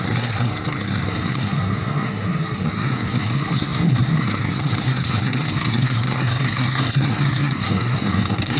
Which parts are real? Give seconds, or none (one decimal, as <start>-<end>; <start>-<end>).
none